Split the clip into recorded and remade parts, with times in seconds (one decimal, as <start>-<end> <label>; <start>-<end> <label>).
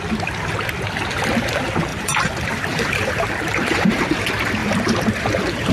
0.0-1.9 recorded; 1.9-4.0 remade; 4.0-4.6 recorded; 4.6-5.7 remade